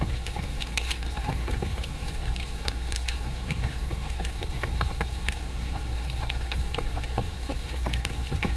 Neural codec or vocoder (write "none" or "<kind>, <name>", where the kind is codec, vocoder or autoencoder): codec, SNAC